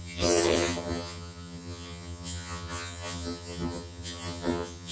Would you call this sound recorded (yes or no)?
no